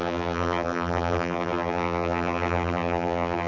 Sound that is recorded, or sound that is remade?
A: remade